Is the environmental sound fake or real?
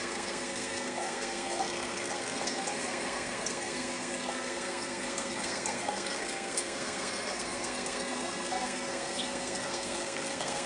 fake